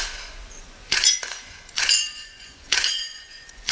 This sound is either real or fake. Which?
fake